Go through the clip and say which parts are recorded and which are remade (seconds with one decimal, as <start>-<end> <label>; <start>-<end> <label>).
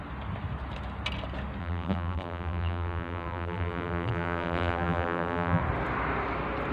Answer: 0.0-1.6 recorded; 1.6-5.6 remade; 5.6-6.7 recorded